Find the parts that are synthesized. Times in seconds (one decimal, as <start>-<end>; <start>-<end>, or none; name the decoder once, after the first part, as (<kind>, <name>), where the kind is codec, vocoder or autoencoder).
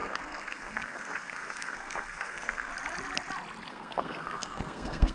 0.0-2.7 (codec, SNAC); 3.7-5.1